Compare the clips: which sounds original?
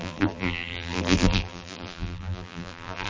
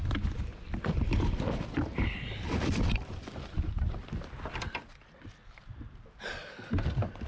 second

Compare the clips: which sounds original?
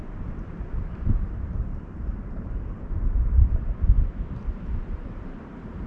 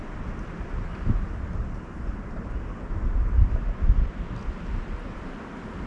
second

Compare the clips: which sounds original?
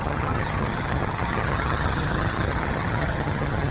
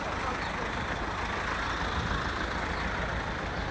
second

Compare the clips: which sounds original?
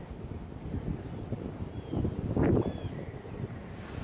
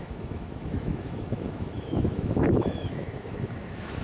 first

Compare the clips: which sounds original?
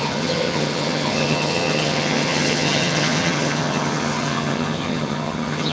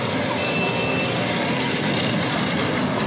second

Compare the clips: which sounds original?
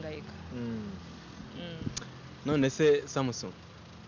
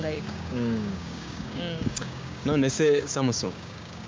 first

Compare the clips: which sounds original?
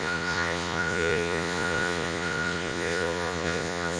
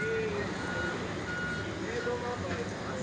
second